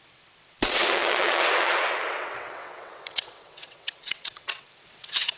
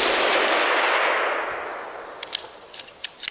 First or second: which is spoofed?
first